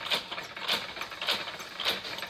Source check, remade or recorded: recorded